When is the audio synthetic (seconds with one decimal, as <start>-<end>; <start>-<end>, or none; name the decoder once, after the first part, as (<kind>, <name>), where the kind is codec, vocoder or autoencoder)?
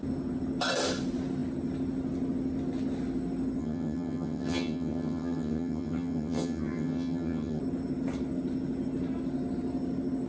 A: 3.6-7.6 (vocoder, HiFi-GAN)